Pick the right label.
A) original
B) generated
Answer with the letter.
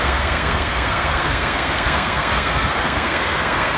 B